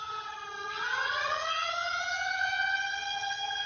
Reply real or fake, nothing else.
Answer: fake